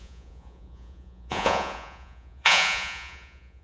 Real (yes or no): no